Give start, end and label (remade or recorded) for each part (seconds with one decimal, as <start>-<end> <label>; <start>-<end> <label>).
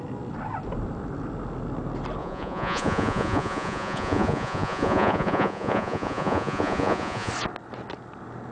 0.0-2.2 recorded; 2.2-7.3 remade; 7.3-8.5 recorded